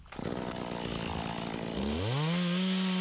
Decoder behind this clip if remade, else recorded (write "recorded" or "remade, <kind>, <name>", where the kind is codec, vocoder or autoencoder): recorded